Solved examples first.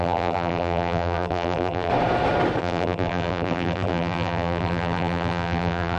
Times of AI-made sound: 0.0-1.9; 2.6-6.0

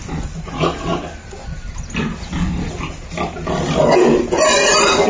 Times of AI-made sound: none

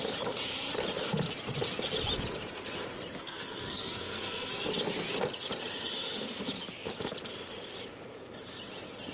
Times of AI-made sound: 3.2-4.5